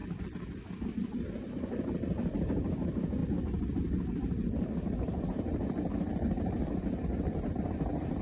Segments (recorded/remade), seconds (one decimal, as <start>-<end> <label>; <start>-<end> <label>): 0.0-1.5 remade; 1.5-8.2 recorded